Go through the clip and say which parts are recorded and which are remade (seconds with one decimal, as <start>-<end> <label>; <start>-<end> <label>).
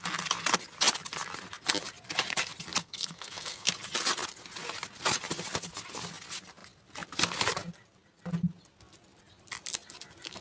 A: 0.0-2.8 recorded; 2.8-3.7 remade; 3.7-10.4 recorded